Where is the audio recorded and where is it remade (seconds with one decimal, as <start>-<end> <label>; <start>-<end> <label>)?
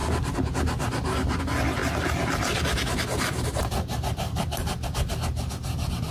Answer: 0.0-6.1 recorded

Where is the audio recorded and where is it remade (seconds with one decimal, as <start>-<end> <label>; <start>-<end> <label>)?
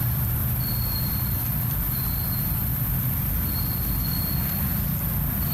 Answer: 0.0-0.4 remade; 0.4-1.0 recorded; 1.0-2.7 remade; 2.7-5.5 recorded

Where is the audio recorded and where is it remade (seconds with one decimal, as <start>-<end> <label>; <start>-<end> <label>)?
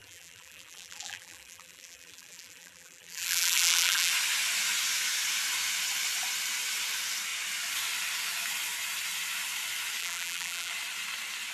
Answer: 0.0-4.1 remade; 4.1-10.0 recorded; 10.0-10.7 remade; 10.7-11.5 recorded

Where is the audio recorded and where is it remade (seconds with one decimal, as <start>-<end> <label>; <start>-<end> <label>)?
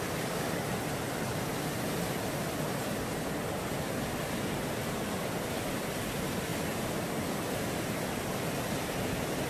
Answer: 0.0-9.5 recorded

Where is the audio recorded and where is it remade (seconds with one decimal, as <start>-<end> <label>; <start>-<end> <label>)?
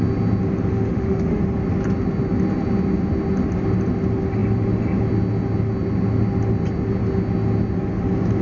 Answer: 0.0-0.7 recorded; 0.7-1.4 remade; 1.4-8.4 recorded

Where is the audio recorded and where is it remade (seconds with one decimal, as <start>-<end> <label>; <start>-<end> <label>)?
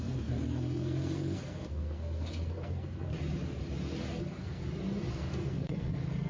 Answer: 0.0-3.1 remade; 3.1-4.1 recorded; 4.1-4.6 remade; 4.6-5.1 recorded; 5.1-6.3 remade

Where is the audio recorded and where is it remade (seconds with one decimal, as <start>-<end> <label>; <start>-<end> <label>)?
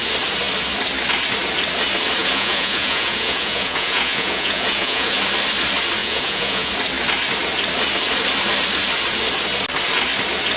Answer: 0.0-2.2 recorded; 2.2-5.2 remade; 5.2-6.0 recorded; 6.0-6.7 remade; 6.7-10.6 recorded